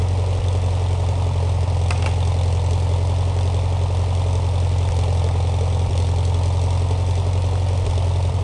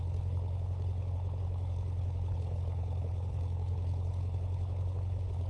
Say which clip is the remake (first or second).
second